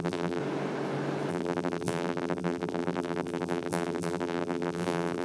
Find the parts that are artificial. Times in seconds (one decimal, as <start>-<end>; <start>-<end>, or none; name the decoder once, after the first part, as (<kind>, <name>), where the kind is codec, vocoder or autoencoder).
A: 0.0-0.4 (vocoder, BigVGAN v2); 1.3-5.2